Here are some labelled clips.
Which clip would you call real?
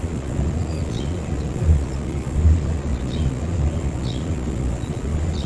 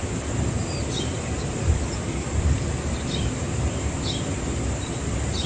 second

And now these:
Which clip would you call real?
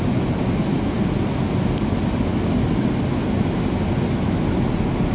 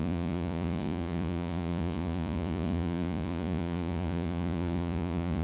first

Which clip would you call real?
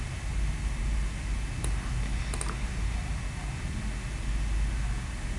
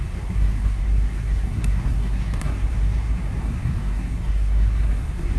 first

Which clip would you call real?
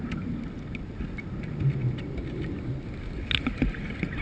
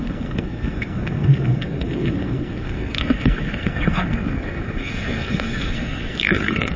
first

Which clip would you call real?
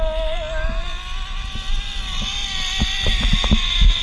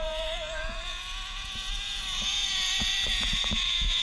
first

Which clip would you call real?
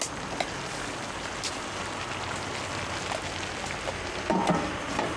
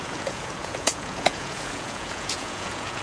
first